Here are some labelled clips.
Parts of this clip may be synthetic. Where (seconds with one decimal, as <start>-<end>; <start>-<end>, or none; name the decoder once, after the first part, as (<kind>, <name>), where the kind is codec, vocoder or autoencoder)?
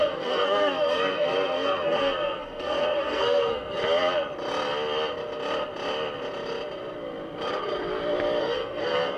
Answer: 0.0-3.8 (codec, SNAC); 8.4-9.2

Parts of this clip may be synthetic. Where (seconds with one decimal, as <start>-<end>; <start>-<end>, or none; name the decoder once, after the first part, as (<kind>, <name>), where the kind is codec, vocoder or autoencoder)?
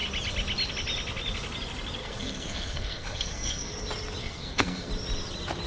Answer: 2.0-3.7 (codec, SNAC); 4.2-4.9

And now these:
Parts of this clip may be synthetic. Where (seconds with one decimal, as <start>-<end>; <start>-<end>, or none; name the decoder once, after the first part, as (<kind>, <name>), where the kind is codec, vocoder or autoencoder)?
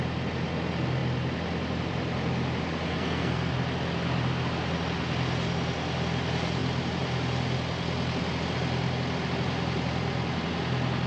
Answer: 2.9-3.5 (codec, SNAC)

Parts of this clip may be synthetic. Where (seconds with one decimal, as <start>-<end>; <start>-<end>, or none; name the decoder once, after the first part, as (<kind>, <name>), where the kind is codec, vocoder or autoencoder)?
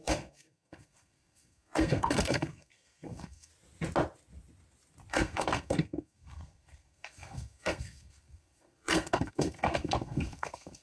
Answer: 0.0-3.5 (codec, SNAC); 5.1-10.8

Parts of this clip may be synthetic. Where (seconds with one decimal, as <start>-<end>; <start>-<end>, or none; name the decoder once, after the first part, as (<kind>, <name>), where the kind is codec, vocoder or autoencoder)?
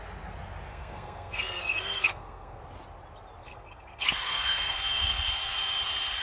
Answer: 0.7-2.6 (codec, SNAC); 3.4-5.3